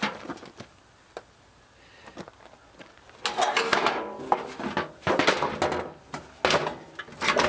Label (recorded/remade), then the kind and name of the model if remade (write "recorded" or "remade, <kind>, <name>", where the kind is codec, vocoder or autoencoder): recorded